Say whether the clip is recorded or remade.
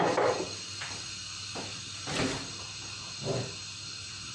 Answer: recorded